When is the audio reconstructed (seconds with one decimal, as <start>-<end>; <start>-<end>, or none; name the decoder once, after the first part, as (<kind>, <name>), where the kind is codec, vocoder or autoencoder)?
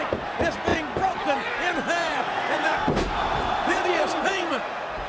2.0-2.8 (vocoder, Vocos); 3.6-5.1